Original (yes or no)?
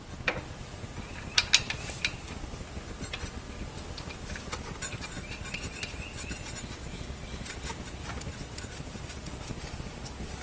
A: yes